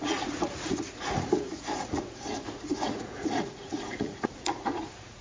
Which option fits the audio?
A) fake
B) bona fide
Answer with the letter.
A